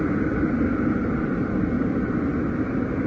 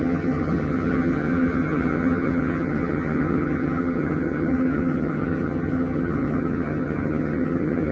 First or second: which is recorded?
first